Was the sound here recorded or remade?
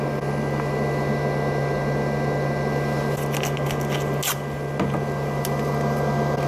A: recorded